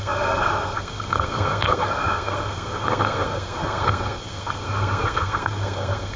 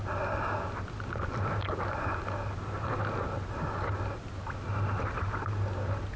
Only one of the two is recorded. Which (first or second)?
second